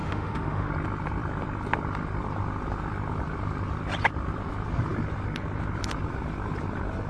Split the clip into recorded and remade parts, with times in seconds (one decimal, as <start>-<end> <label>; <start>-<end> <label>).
0.0-0.7 remade; 0.7-7.1 recorded